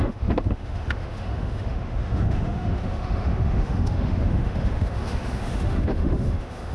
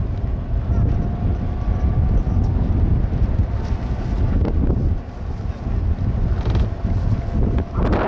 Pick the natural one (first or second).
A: second